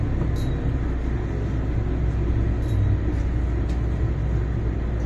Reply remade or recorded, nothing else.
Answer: recorded